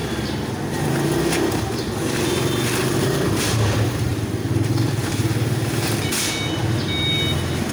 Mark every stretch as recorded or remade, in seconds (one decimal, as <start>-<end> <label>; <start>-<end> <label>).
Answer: 0.0-4.1 recorded; 4.1-5.2 remade; 5.2-7.7 recorded